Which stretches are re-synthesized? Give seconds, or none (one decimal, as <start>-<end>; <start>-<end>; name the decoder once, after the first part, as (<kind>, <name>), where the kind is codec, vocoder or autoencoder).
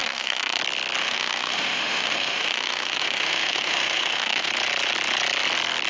0.0-0.6 (autoencoder, DAC-VAE); 1.0-4.5